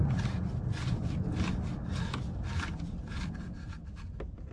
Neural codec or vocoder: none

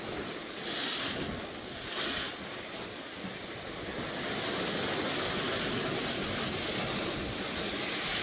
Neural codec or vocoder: none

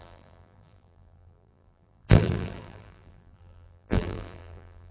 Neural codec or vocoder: vocoder, BigVGAN v2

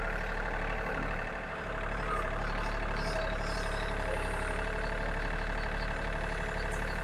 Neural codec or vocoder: vocoder, BigVGAN v2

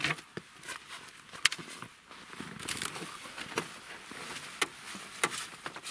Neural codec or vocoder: none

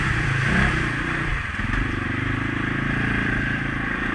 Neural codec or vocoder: vocoder, BigVGAN v2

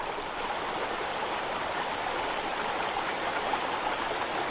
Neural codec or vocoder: none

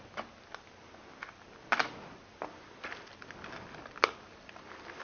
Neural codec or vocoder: vocoder, BigVGAN v2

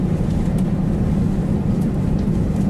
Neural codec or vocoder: none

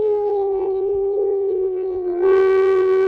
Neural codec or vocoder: vocoder, BigVGAN v2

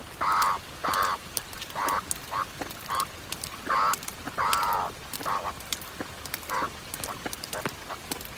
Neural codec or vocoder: none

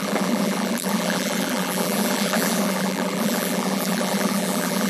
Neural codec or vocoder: vocoder, BigVGAN v2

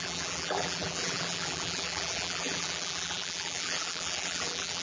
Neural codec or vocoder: vocoder, BigVGAN v2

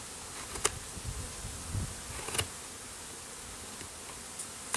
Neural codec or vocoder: none